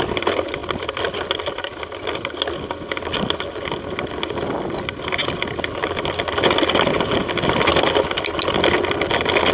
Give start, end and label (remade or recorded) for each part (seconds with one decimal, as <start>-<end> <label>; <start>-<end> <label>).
0.0-9.5 recorded